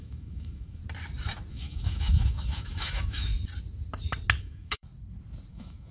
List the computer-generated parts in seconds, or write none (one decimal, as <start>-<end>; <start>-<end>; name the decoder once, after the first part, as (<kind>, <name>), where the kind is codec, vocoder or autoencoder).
0.0-0.8 (autoencoder, DAC-VAE); 1.5-3.3; 4.4-4.9; 5.5-5.9